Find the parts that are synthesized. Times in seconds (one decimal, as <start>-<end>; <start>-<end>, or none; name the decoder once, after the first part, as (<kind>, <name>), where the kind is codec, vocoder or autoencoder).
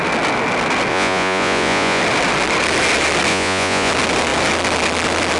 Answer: 0.9-2.0 (vocoder, Vocos); 3.3-3.9